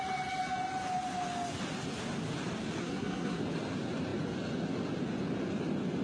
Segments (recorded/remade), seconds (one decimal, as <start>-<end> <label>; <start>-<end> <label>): 0.0-2.8 recorded; 2.8-3.4 remade; 3.4-6.0 recorded